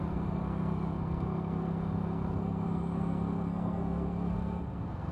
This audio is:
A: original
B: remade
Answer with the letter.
B